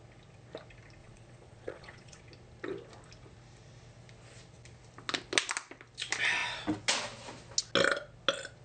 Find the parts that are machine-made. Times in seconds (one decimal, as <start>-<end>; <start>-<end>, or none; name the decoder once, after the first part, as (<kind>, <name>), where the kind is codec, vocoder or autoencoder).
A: 1.0-2.2 (vocoder, Vocos)